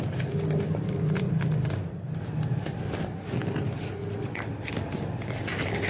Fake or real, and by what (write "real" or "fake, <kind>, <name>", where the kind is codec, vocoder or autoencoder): real